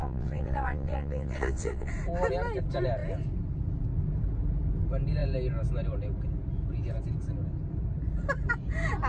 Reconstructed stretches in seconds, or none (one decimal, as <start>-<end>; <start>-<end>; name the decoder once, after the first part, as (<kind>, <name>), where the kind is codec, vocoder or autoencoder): 0.0-1.9 (vocoder, WaveNeXt)